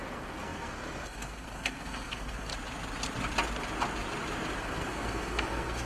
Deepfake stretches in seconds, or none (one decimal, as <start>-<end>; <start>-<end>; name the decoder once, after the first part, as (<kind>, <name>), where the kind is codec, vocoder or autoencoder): 0.0-2.5 (codec, SNAC); 4.6-5.9